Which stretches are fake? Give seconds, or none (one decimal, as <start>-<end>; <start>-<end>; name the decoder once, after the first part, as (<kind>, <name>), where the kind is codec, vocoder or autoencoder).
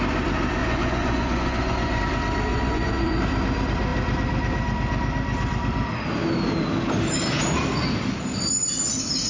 0.6-2.0 (vocoder, Vocos); 2.5-3.2